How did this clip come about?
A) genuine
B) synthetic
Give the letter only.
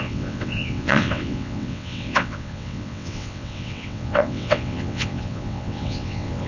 B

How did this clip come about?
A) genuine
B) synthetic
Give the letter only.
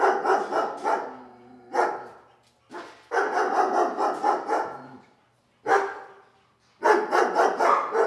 A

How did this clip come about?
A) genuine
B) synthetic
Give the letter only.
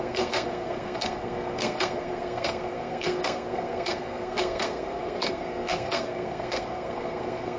B